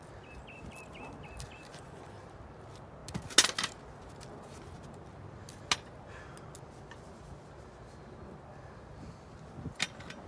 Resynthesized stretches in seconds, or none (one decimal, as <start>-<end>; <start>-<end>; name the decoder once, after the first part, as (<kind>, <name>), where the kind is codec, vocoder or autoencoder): 1.7-2.2 (vocoder, Vocos)